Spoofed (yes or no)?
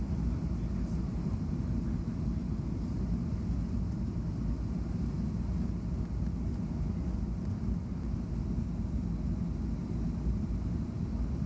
no